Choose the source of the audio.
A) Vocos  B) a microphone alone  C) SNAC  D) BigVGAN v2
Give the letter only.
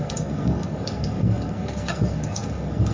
C